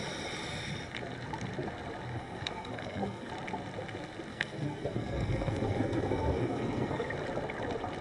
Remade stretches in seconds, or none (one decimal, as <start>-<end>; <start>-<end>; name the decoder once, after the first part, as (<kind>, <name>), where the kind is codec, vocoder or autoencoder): 2.1-3.3 (codec, SNAC); 4.3-7.1

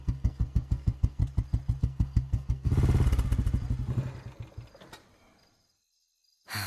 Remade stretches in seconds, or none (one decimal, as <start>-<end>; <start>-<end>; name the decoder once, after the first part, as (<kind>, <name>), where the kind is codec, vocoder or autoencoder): 0.0-1.2 (codec, SNAC); 1.8-2.7

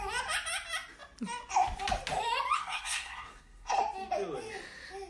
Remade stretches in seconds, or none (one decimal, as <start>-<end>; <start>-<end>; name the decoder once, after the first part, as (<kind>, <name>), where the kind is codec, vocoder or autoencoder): 2.6-3.8 (codec, SNAC)

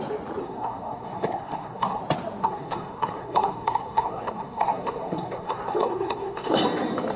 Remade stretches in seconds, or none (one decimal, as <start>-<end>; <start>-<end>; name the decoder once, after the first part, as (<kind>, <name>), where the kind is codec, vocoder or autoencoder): 0.4-2.0 (codec, SNAC); 2.4-6.6

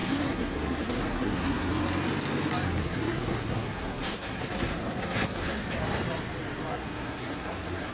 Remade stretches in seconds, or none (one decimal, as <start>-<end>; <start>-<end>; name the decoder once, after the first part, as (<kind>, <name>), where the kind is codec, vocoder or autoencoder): 0.0-1.7 (codec, SNAC); 2.8-5.6; 6.7-7.9